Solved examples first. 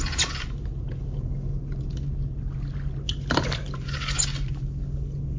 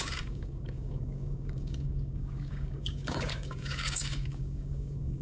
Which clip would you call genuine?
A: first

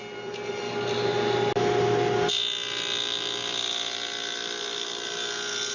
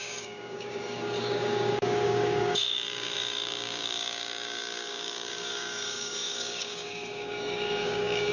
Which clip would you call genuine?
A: first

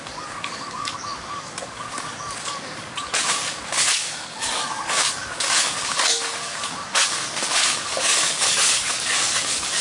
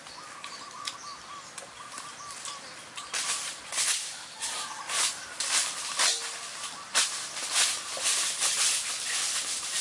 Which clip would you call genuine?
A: second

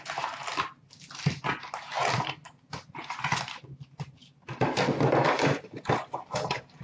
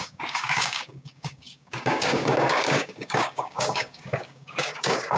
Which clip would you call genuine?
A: first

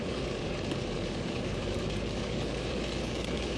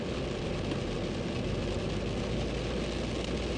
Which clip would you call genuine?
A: second